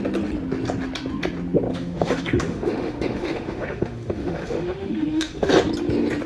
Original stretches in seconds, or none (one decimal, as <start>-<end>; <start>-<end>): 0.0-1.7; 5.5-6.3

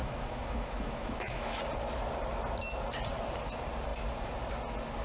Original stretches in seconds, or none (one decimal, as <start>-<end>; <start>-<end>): 1.6-5.0

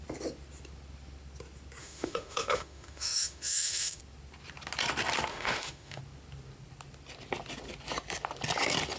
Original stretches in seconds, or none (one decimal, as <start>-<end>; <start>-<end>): 0.0-1.8; 4.0-5.3; 6.0-9.0